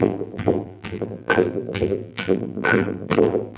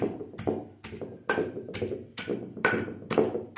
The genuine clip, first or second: second